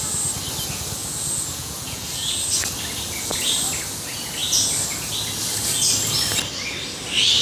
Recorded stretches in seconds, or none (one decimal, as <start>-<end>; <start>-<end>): 0.0-1.0; 2.0-7.4